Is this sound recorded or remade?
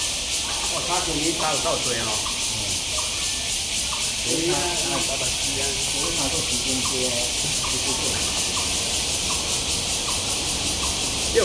recorded